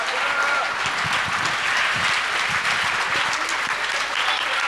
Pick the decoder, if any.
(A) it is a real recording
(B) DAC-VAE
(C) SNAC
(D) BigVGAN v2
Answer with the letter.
A